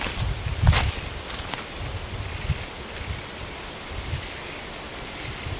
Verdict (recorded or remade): recorded